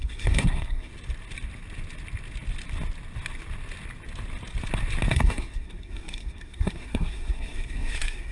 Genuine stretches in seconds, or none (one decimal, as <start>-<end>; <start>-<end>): 0.9-5.1